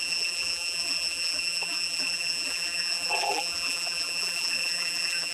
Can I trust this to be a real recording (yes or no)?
no